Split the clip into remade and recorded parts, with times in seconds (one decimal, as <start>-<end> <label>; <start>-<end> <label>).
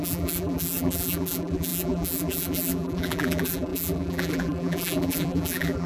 0.0-5.9 remade